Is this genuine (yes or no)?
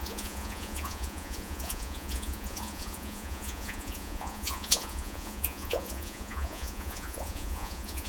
no